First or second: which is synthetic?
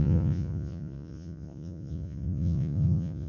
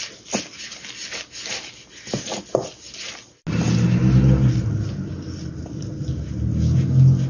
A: first